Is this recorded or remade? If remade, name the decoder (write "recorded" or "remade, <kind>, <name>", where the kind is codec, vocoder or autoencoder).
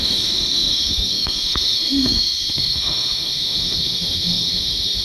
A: remade, autoencoder, DAC-VAE